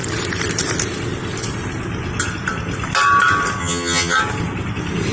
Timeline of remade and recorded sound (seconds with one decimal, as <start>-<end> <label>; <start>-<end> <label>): 0.0-3.6 recorded; 3.6-4.2 remade; 4.2-5.1 recorded